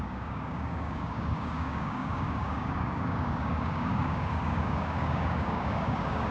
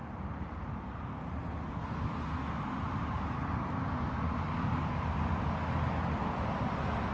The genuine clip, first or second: second